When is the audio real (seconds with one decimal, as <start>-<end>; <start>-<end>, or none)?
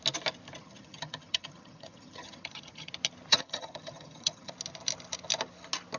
0.0-0.6; 2.9-3.3; 4.5-6.0